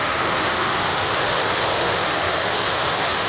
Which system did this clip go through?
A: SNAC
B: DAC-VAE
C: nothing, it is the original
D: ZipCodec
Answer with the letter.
B